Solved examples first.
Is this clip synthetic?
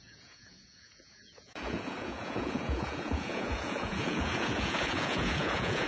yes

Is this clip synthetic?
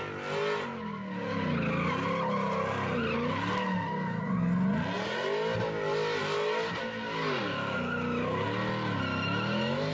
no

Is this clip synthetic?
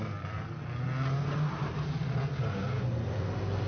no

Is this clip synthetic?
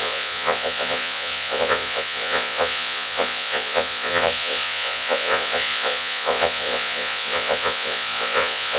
yes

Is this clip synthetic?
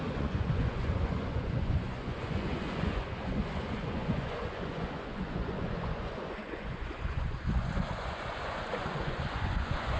yes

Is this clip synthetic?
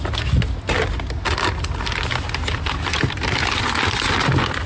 no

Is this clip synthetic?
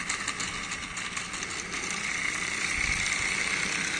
no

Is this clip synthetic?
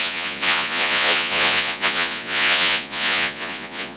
yes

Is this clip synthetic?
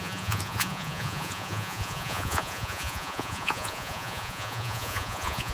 yes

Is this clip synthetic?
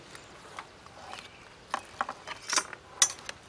no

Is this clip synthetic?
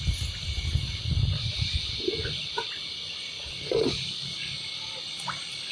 no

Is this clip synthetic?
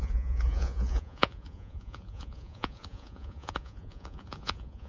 yes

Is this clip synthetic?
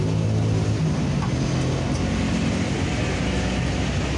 no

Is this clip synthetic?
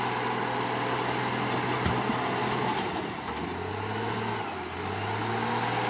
no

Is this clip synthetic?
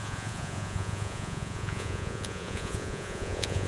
yes